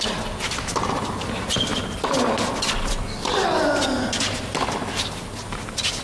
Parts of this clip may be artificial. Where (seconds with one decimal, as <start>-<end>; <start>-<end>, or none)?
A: none

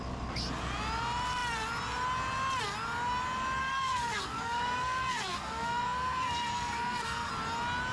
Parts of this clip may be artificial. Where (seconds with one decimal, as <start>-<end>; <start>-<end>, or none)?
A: 3.6-7.3